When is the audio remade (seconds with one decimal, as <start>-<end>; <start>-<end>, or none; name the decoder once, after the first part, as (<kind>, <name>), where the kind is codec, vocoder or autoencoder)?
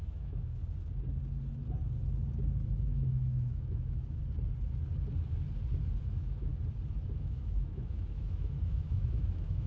0.0-0.6 (autoencoder, DAC-VAE); 2.8-4.2; 6.1-6.5; 7.2-9.7